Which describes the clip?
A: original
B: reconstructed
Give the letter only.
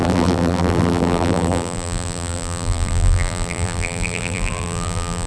B